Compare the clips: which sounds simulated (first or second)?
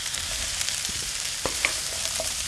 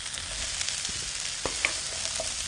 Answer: first